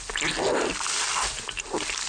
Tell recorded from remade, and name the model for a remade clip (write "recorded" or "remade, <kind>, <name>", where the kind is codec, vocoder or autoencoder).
recorded